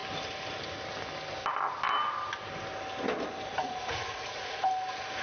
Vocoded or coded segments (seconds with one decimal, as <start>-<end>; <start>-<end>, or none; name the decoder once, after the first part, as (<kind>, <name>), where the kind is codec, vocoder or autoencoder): 3.5-4.7 (vocoder, Vocos)